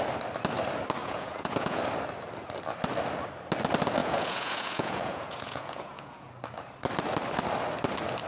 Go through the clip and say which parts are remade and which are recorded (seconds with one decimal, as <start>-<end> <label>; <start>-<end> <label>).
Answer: 0.0-1.0 recorded; 1.0-1.8 remade; 1.8-4.0 recorded; 4.0-6.3 remade; 6.3-8.3 recorded